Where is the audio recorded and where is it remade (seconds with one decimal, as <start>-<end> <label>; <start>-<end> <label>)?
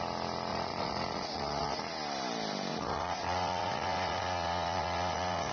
0.0-0.5 recorded; 0.5-1.8 remade; 1.8-2.7 recorded; 2.7-5.5 remade